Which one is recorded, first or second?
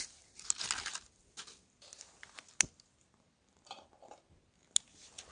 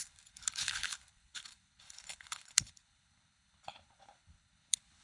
first